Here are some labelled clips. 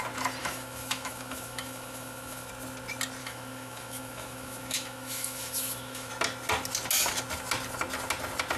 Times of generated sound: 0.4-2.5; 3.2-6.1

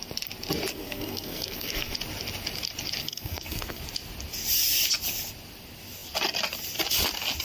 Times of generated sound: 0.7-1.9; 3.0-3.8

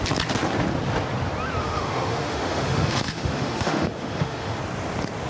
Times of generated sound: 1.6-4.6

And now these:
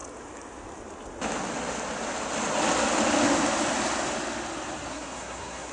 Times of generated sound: 4.9-5.7

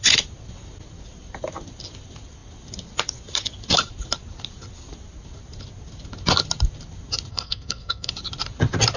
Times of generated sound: 7.3-8.1

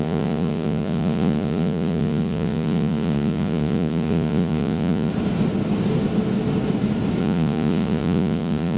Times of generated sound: 0.0-5.1; 7.2-8.8

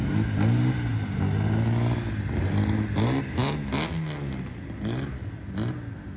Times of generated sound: none